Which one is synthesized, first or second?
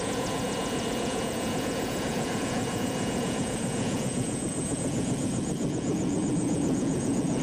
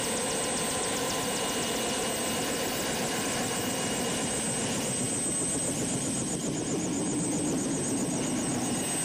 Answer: first